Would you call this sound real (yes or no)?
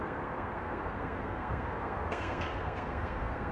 no